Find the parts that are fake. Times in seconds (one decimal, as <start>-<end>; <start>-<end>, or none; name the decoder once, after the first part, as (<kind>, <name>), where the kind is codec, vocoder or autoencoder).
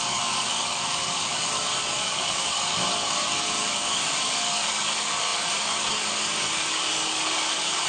0.0-7.9 (codec, DAC)